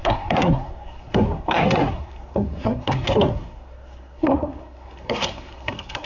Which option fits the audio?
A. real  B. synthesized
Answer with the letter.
B